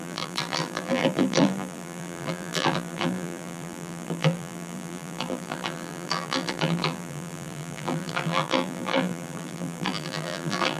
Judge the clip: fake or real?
fake